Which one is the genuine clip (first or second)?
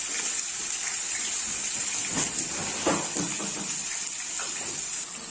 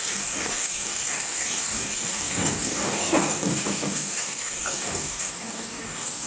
first